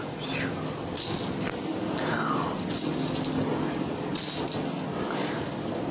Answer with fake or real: real